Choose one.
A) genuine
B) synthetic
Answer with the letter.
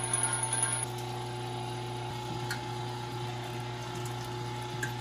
A